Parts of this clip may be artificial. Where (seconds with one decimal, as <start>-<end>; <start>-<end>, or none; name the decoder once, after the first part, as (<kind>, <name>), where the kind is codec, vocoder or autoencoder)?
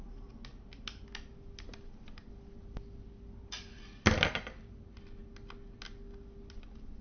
none